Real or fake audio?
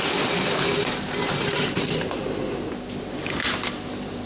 real